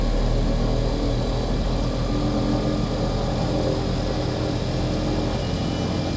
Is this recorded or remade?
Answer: recorded